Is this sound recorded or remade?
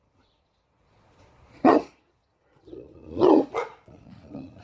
remade